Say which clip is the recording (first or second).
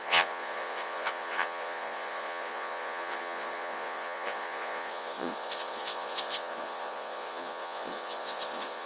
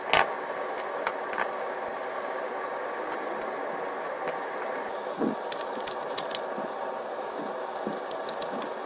second